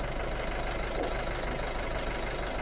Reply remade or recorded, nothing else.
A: recorded